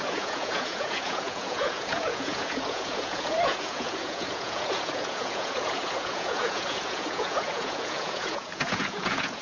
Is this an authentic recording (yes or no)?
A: no